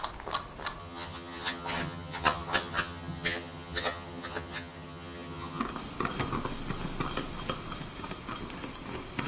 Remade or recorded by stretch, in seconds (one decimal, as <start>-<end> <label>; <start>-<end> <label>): 0.0-0.8 recorded; 0.8-5.6 remade; 5.6-9.3 recorded